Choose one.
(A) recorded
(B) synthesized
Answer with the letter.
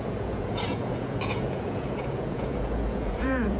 B